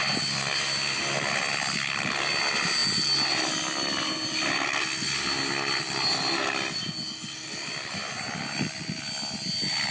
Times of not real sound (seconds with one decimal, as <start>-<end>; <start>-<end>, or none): none